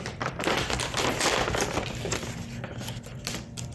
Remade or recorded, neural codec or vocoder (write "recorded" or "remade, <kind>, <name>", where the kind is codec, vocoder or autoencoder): recorded